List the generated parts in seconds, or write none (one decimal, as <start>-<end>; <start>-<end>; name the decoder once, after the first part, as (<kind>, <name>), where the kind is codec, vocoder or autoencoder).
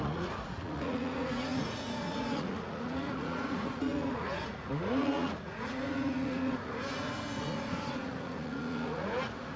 0.0-9.6 (vocoder, Vocos)